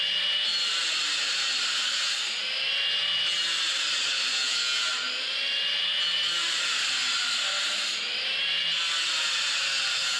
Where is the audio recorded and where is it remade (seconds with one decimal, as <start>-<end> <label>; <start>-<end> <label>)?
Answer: 0.0-10.2 recorded